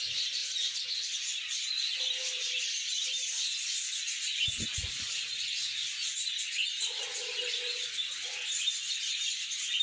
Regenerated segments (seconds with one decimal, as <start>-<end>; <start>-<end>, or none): none